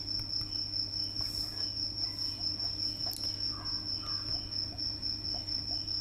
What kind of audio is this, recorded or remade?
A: recorded